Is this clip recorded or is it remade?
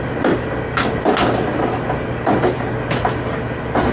recorded